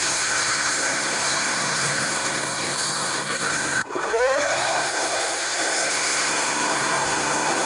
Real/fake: fake